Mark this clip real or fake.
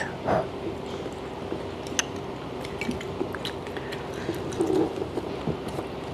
real